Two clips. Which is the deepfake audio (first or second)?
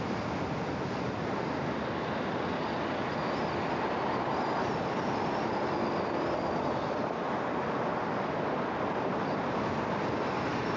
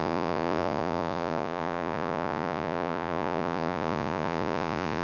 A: second